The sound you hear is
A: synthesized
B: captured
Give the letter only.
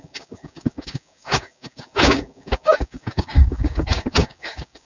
A